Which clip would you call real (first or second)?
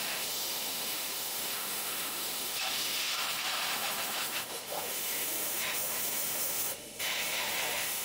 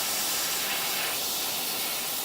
second